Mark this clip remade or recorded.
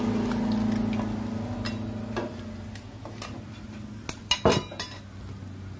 recorded